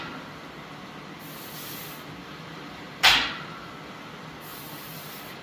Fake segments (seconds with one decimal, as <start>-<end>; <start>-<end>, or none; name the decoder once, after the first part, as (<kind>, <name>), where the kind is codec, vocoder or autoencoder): 2.2-3.7 (vocoder, BigVGAN v2); 4.5-5.4